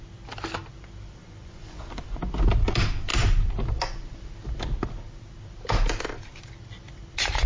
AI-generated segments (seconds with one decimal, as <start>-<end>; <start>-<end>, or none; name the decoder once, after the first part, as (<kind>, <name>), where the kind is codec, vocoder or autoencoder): 1.2-2.2 (vocoder, Vocos)